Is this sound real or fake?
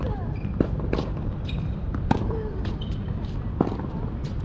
real